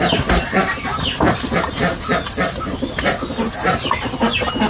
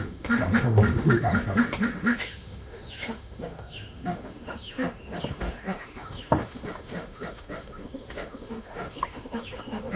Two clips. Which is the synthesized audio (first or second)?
second